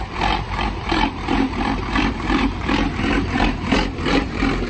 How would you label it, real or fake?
fake